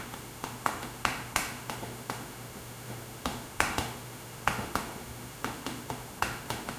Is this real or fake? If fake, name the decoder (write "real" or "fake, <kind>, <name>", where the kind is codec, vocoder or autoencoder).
fake, autoencoder, DAC-VAE